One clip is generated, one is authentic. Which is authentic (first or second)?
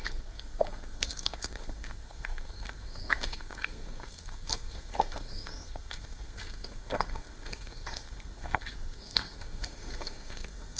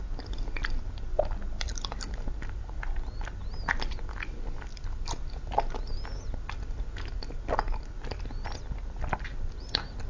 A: second